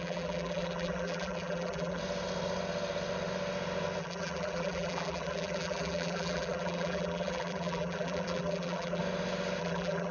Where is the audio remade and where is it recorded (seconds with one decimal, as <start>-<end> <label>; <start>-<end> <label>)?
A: 0.0-2.0 remade; 2.0-4.0 recorded; 4.0-9.0 remade; 9.0-9.6 recorded; 9.6-10.1 remade